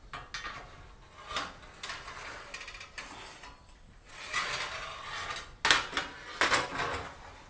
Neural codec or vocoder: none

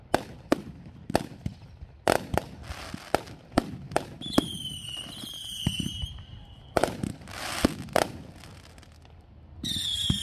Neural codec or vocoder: none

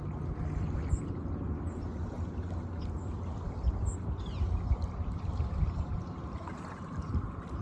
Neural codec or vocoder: none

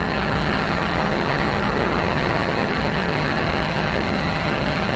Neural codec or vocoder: vocoder, HiFi-GAN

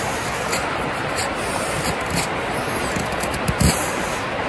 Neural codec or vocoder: none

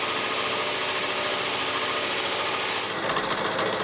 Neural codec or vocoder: none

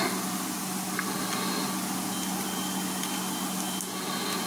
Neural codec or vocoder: none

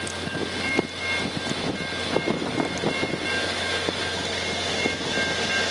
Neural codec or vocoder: none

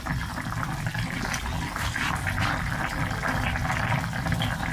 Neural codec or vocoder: none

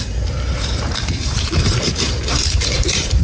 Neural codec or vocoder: vocoder, BigVGAN v2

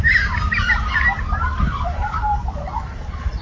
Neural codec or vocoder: none